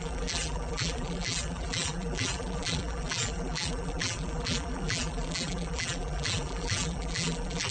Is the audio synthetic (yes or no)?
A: yes